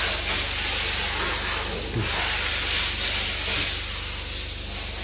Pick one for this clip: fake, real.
real